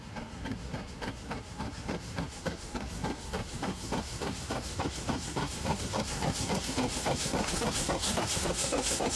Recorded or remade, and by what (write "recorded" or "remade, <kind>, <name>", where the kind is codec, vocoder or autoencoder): remade, codec, SNAC